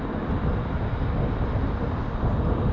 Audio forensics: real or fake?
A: real